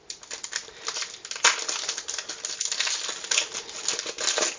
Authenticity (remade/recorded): recorded